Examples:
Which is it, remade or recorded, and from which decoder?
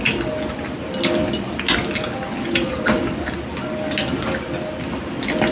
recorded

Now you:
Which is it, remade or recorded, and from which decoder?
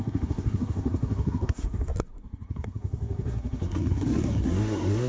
remade, codec, SNAC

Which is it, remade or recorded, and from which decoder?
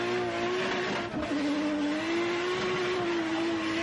recorded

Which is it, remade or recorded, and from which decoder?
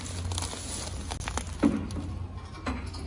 recorded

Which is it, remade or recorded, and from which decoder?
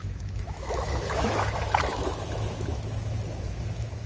remade, autoencoder, DAC-VAE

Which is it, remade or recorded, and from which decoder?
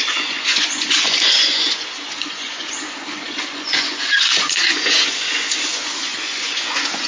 remade, vocoder, Vocos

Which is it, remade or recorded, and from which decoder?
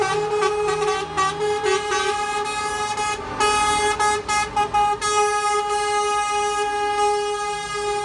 recorded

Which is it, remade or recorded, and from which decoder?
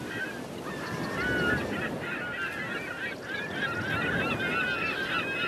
recorded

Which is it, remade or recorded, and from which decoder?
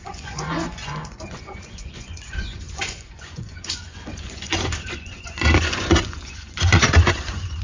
remade, vocoder, Vocos